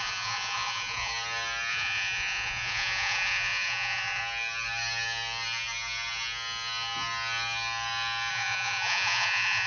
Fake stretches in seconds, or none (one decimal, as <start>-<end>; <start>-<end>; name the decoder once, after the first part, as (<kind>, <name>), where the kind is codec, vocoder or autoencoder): 0.0-1.1 (vocoder, Vocos); 1.7-4.2; 8.3-9.7